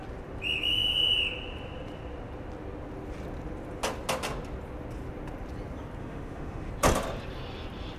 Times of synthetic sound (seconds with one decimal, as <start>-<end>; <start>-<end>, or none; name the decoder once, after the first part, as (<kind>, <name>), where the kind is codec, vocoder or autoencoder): 6.0-6.7 (autoencoder, DAC-VAE)